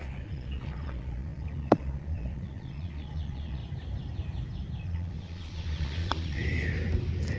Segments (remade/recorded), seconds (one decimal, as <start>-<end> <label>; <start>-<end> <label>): 0.0-3.6 remade; 3.6-4.8 recorded; 4.8-6.4 remade; 6.4-7.4 recorded

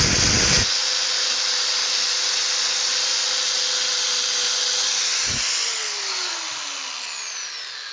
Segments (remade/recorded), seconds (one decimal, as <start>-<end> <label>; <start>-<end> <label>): 0.0-7.9 recorded

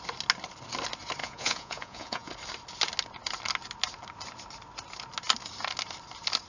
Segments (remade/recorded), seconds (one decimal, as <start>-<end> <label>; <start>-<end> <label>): 0.0-1.2 recorded; 1.2-2.3 remade; 2.3-6.5 recorded

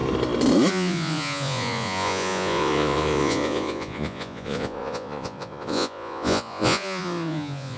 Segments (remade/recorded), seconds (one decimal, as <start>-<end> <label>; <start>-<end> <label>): 0.0-0.7 recorded; 0.7-7.8 remade

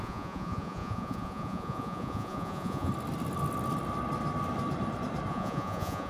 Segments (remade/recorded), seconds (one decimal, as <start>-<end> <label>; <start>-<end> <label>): 0.0-2.9 remade; 2.9-5.3 recorded; 5.3-6.1 remade

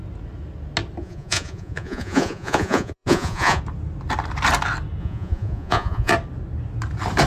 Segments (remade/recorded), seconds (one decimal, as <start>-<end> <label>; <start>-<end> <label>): 0.0-1.0 recorded; 1.0-3.6 remade; 3.6-5.0 recorded; 5.0-6.1 remade; 6.1-7.3 recorded

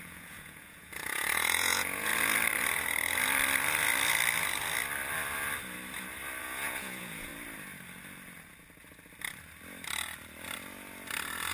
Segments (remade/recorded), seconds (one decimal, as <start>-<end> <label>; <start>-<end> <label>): 0.0-2.1 remade; 2.1-6.4 recorded; 6.4-7.3 remade; 7.3-11.5 recorded

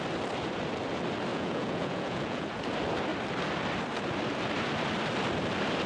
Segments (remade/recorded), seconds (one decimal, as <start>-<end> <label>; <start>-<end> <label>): 0.0-1.3 recorded; 1.3-2.6 remade; 2.6-5.9 recorded